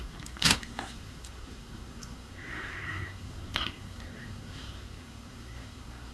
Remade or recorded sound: remade